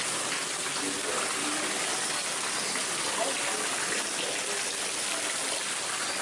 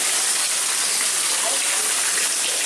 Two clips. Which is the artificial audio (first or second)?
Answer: second